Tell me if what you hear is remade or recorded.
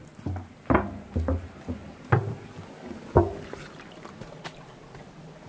recorded